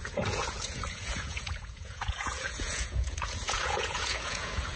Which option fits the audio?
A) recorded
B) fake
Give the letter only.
B